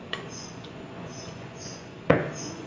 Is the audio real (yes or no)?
no